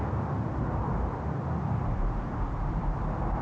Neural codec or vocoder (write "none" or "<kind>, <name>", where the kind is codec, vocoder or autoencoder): none